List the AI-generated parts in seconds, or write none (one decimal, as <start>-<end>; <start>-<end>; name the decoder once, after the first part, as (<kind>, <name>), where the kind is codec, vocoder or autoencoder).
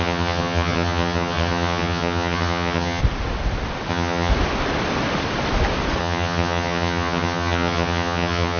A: 0.0-3.0 (vocoder, HiFi-GAN); 3.9-4.3; 6.0-8.6